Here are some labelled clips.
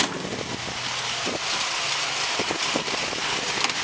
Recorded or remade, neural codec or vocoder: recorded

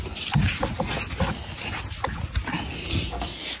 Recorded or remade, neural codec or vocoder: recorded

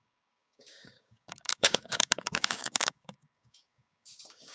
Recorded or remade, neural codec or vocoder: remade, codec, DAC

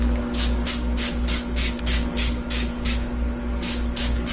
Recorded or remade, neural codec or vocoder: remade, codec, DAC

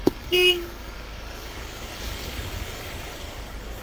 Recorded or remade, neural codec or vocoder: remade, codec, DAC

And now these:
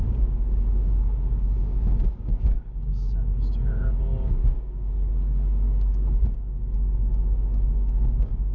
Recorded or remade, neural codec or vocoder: remade, codec, DAC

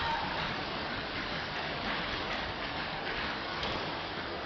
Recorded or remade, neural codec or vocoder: remade, codec, DAC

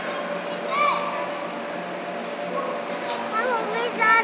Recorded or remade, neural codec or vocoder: recorded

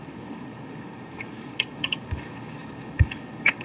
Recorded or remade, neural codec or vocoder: remade, codec, DAC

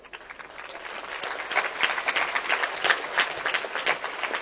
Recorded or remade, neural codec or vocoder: recorded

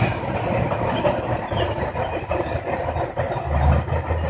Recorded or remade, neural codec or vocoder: recorded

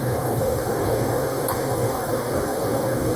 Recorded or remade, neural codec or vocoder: remade, codec, DAC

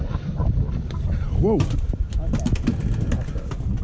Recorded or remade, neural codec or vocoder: recorded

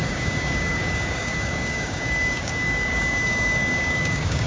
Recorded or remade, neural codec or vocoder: remade, codec, DAC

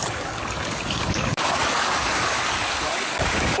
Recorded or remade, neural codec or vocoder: remade, codec, DAC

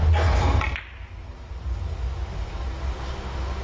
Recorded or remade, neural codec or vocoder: recorded